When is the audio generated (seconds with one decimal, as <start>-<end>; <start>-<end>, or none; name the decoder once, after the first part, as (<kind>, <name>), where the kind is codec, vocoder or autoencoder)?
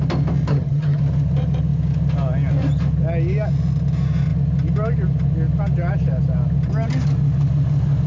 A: 0.5-1.0 (vocoder, HiFi-GAN)